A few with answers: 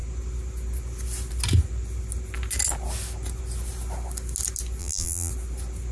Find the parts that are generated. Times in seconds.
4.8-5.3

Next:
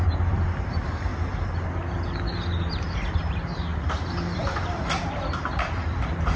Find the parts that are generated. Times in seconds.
0.0-1.1; 2.6-6.4

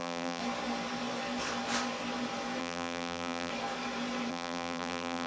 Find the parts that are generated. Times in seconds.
0.0-0.4; 2.6-3.5; 4.3-5.3

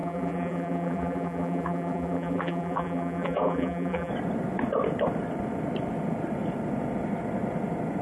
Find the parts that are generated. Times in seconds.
0.0-4.1

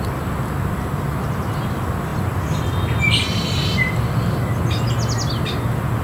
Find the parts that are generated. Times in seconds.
none